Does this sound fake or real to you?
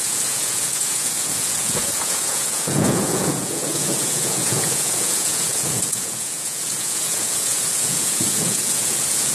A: fake